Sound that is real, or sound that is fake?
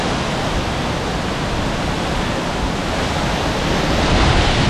real